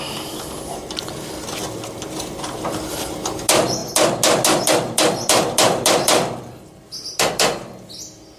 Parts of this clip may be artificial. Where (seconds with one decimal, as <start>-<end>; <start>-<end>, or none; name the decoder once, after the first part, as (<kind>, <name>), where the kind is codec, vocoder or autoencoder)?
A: none